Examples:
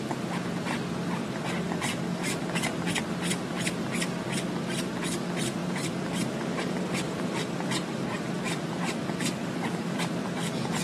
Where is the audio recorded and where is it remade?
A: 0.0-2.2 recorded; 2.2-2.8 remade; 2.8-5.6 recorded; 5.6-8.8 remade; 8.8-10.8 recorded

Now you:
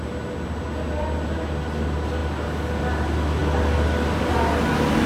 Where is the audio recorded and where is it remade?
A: 0.0-5.1 recorded

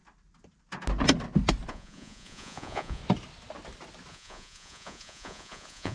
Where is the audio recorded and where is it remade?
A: 0.0-1.7 recorded; 1.7-3.0 remade; 3.0-4.1 recorded; 4.1-5.9 remade

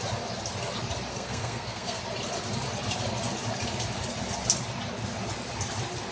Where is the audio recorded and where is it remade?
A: 0.0-1.1 recorded; 1.1-2.0 remade; 2.0-6.1 recorded

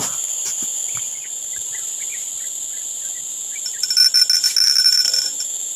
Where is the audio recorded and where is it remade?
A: 0.0-4.0 remade; 4.0-4.8 recorded; 4.8-5.8 remade

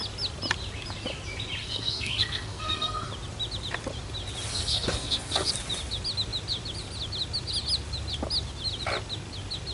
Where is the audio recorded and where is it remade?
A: 0.0-1.6 recorded; 1.6-3.1 remade; 3.1-4.5 recorded; 4.5-5.5 remade; 5.5-9.7 recorded

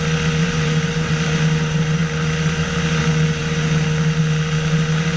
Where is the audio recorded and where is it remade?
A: 0.0-0.4 recorded; 0.4-1.1 remade; 1.1-5.2 recorded

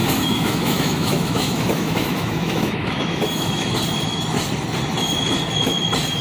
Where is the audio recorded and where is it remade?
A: 0.0-3.7 remade; 3.7-6.2 recorded